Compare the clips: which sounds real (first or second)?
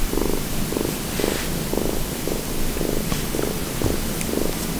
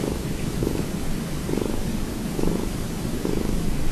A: first